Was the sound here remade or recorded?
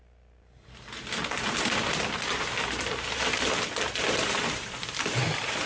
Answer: recorded